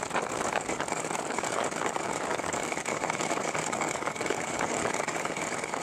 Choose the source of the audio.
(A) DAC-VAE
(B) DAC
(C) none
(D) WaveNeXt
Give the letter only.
B